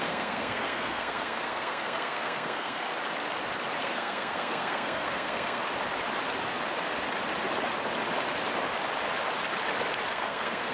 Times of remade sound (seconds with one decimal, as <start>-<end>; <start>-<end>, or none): 0.0-2.9; 3.8-5.6; 10.1-10.7